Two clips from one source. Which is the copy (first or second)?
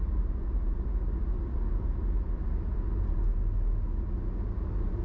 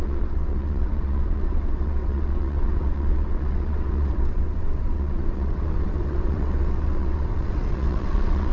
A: second